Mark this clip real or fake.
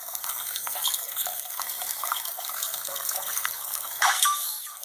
fake